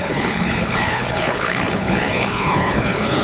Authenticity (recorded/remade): remade